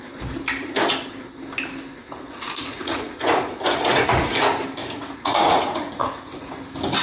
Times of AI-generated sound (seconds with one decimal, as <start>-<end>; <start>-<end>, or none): 2.0-4.3; 4.8-6.5